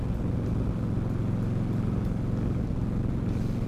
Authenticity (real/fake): real